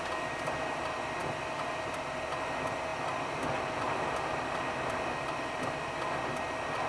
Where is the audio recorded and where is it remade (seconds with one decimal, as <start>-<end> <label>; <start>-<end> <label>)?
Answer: 0.0-1.2 recorded; 1.2-2.3 remade; 2.3-6.9 recorded